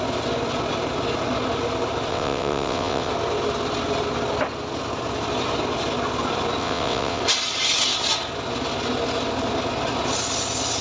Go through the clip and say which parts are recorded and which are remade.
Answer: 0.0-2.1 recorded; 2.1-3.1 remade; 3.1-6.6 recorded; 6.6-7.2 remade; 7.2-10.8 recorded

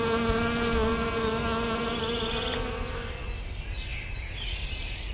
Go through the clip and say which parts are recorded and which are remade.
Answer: 0.0-5.1 recorded

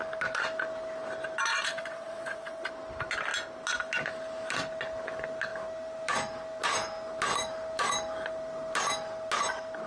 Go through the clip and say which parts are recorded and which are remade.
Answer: 0.0-1.5 recorded; 1.5-2.7 remade; 2.7-9.9 recorded

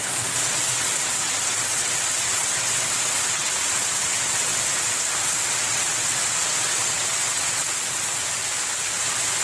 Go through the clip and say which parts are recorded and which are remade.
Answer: 0.0-4.5 remade; 4.5-5.2 recorded; 5.2-8.2 remade; 8.2-9.4 recorded

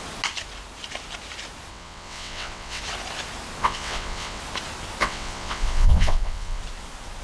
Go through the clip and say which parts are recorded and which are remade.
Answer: 0.0-1.7 recorded; 1.7-2.8 remade; 2.8-3.6 recorded; 3.6-4.4 remade; 4.4-5.0 recorded; 5.0-6.6 remade; 6.6-7.2 recorded

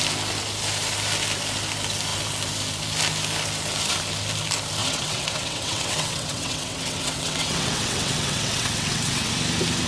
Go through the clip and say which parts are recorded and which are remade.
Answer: 0.0-4.8 recorded; 4.8-9.3 remade; 9.3-9.9 recorded

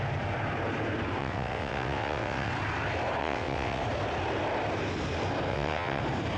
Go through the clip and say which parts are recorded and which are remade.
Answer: 0.0-1.2 recorded; 1.2-2.5 remade; 2.5-3.2 recorded; 3.2-3.8 remade; 3.8-5.5 recorded; 5.5-6.0 remade; 6.0-6.4 recorded